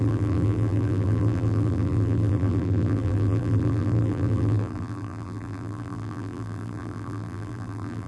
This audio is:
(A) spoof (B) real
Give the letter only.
A